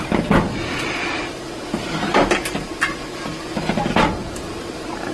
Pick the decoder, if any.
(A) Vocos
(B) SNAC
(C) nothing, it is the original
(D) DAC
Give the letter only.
C